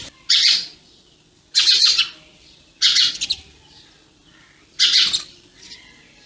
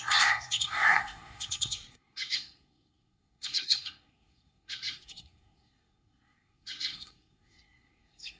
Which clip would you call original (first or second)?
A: first